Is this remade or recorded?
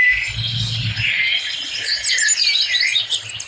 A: recorded